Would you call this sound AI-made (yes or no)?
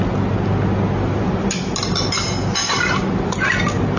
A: no